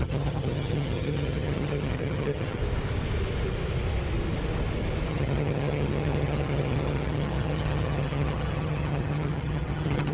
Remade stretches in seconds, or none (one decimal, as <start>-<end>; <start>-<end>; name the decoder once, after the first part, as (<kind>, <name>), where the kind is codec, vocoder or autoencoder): 0.0-2.6 (vocoder, HiFi-GAN); 5.1-10.1